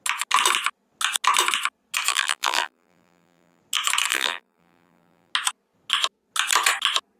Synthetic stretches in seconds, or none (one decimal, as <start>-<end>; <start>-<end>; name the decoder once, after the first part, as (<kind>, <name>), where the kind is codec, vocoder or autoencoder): 2.1-3.6 (vocoder, BigVGAN v2); 4.1-5.3